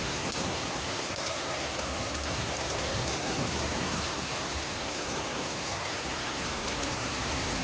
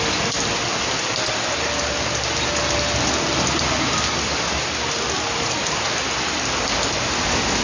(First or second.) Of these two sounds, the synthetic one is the first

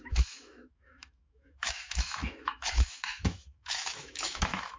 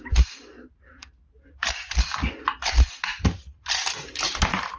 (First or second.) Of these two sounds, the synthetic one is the first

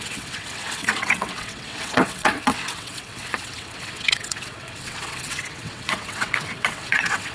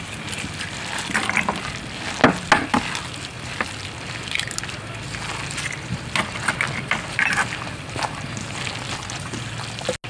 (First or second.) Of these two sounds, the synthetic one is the first